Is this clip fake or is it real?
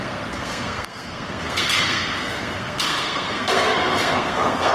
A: fake